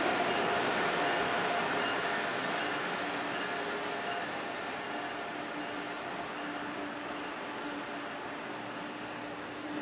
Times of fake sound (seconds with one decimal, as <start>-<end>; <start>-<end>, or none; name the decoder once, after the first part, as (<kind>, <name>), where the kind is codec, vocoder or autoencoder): 2.1-3.4 (autoencoder, DAC-VAE)